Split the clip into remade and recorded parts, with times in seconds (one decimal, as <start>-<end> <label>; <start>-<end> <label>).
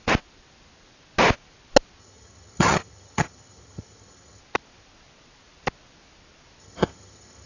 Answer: 0.0-2.0 recorded; 2.0-4.4 remade; 4.4-6.6 recorded; 6.6-7.5 remade